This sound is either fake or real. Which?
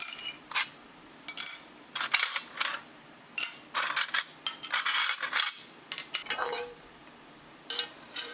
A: real